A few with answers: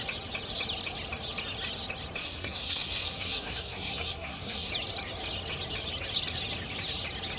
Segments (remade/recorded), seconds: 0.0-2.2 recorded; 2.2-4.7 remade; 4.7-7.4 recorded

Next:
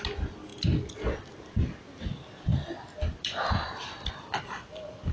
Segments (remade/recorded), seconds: 0.0-5.1 recorded

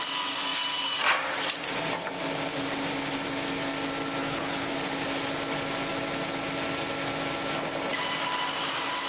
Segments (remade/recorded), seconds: 0.0-4.2 recorded; 4.2-4.7 remade; 4.7-9.1 recorded

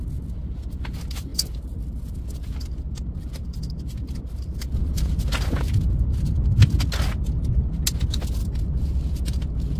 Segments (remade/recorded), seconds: 0.0-1.3 recorded; 1.3-5.0 remade; 5.0-8.4 recorded; 8.4-9.0 remade; 9.0-9.8 recorded

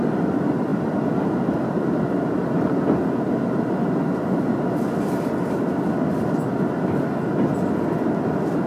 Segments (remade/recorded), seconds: 0.0-8.7 recorded

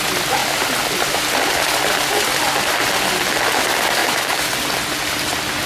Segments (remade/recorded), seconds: 0.0-4.0 recorded; 4.0-4.5 remade; 4.5-5.7 recorded